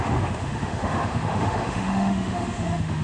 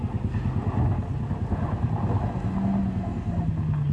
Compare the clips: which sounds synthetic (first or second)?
first